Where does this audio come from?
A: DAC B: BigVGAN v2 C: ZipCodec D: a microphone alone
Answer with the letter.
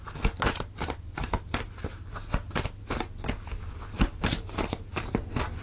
D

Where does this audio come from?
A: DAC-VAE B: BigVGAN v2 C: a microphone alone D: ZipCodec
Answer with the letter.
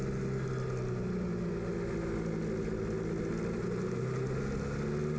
C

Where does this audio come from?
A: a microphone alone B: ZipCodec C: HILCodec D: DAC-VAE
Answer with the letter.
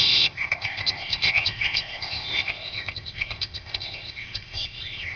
B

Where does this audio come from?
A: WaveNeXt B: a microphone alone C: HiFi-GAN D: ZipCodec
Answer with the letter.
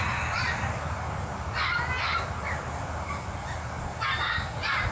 B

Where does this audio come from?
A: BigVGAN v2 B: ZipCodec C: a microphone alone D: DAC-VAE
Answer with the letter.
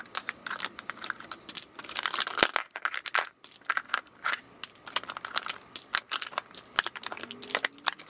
C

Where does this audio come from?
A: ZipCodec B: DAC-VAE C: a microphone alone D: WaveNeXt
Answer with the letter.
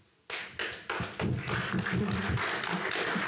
C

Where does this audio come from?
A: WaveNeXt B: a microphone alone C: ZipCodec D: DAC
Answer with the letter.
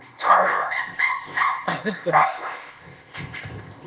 C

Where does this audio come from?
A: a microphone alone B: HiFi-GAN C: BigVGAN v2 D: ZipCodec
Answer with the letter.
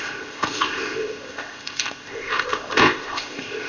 D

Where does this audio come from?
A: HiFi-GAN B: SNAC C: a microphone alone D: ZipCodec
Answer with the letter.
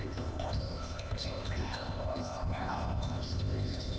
D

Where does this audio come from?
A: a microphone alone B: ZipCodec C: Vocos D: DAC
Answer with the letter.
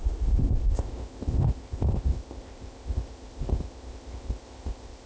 B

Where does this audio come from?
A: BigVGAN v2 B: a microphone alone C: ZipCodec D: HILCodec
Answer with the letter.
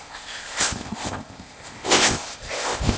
C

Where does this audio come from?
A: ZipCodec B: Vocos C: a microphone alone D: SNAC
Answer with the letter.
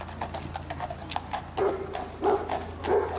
C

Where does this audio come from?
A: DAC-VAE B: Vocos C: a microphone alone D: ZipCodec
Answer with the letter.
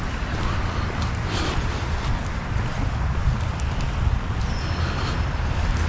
C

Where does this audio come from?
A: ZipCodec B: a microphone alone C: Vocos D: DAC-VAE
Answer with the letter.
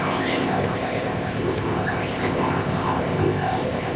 A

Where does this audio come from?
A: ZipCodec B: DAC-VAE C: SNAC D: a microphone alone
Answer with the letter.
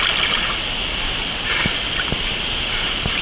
D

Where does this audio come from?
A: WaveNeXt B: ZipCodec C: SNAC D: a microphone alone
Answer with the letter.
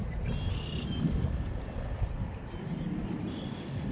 D